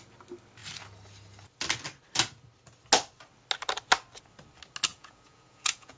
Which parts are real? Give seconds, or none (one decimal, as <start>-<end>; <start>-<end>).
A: 0.0-4.9